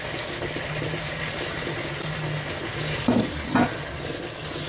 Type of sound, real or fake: real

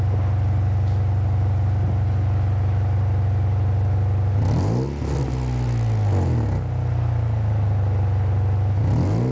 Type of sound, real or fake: real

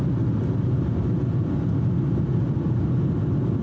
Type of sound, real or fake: real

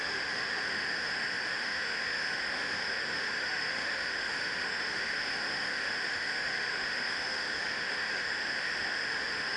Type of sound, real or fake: fake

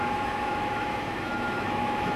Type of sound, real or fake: fake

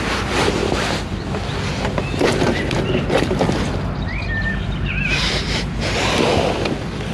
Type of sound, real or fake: real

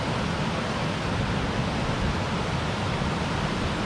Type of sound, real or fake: real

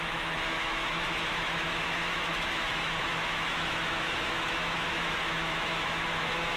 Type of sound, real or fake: fake